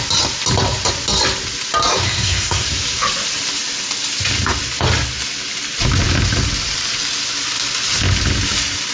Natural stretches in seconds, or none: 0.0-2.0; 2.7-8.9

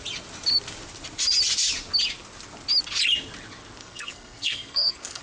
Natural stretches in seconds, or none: 0.0-3.8

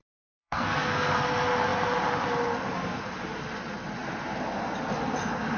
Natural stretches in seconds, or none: 1.1-5.6

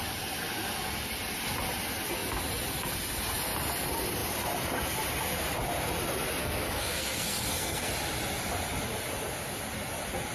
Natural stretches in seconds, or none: 0.0-6.4; 7.9-10.3

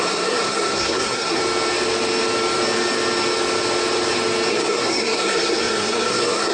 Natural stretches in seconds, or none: 1.4-4.5

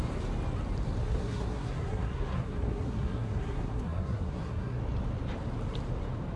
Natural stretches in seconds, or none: 0.0-1.0; 4.8-6.4

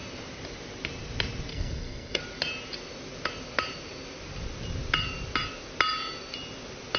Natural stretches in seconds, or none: 0.0-1.5; 2.2-7.0